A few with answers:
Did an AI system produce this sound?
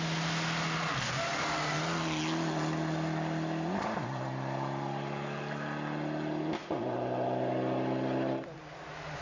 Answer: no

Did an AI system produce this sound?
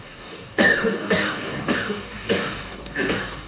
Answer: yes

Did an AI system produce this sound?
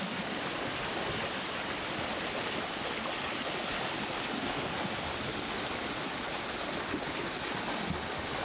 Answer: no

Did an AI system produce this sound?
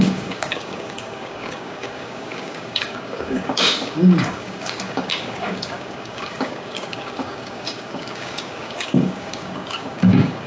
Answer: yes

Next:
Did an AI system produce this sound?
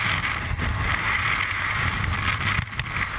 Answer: no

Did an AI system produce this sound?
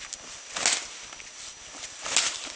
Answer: no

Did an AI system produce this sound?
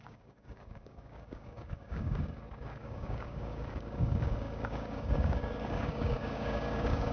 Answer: yes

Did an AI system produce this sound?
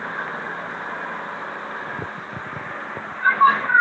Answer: no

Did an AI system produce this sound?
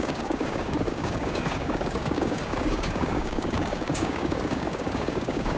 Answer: yes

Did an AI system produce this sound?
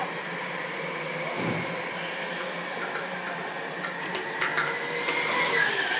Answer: no